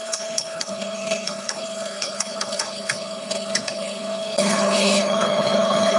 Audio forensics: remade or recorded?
remade